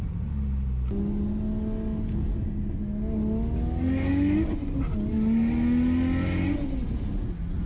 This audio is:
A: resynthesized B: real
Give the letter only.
B